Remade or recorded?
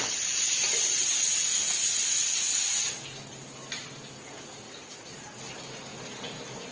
recorded